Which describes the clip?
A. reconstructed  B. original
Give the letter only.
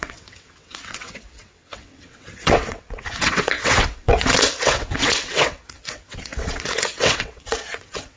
A